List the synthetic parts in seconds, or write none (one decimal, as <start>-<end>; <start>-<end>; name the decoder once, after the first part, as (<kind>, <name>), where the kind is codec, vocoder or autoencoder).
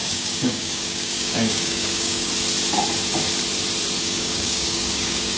0.0-2.3 (codec, DAC); 4.0-5.4